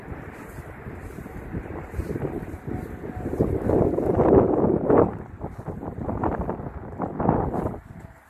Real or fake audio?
real